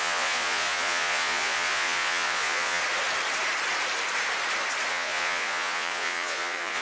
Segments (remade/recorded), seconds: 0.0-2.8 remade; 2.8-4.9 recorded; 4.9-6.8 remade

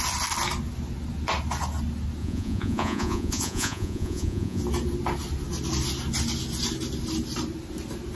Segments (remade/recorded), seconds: 0.0-2.2 recorded; 2.2-4.6 remade; 4.6-8.1 recorded

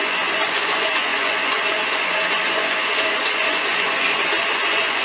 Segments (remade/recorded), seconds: 0.0-5.0 remade

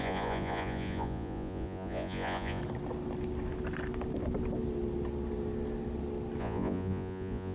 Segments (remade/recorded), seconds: 0.0-2.6 remade; 2.6-6.4 recorded; 6.4-7.5 remade

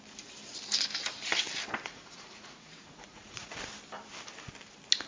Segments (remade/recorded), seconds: 0.0-1.9 recorded; 1.9-3.5 remade; 3.5-5.1 recorded

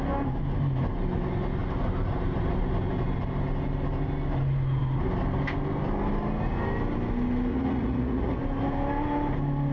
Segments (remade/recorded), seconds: 0.0-7.5 recorded; 7.5-8.4 remade; 8.4-9.7 recorded

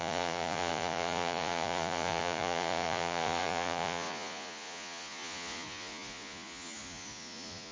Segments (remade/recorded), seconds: 0.0-7.7 remade

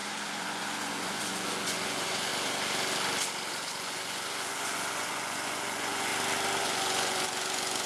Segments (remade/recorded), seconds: 0.0-2.3 remade; 2.3-3.5 recorded; 3.5-6.1 remade; 6.1-6.6 recorded; 6.6-7.9 remade